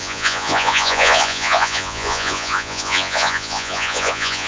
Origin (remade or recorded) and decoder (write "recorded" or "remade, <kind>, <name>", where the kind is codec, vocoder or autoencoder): remade, vocoder, Vocos